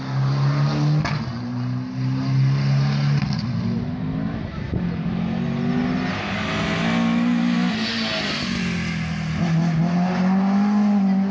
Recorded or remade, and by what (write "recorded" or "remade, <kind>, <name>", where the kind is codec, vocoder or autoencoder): recorded